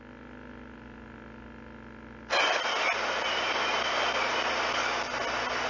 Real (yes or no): yes